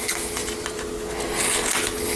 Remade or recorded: recorded